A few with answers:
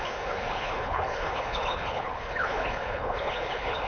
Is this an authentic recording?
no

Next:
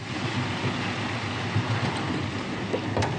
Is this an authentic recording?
yes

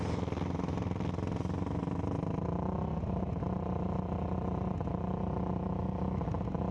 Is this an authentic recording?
yes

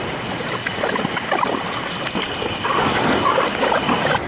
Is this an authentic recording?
yes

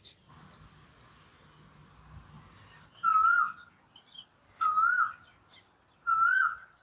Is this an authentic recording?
yes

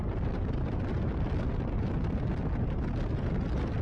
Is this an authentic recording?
yes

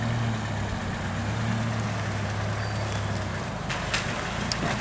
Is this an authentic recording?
yes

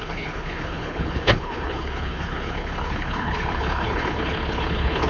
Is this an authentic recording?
no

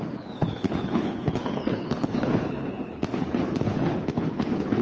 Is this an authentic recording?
no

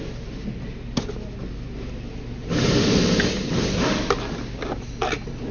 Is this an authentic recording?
yes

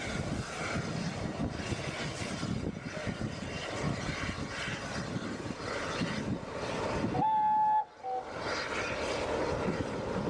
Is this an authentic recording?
yes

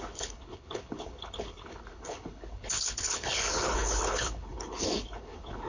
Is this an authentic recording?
no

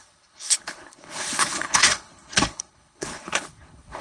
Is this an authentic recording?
no